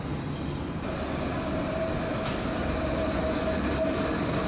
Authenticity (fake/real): real